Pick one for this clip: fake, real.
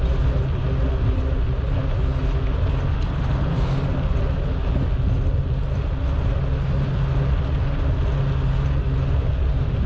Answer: real